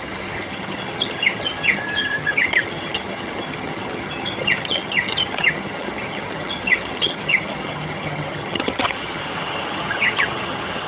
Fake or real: fake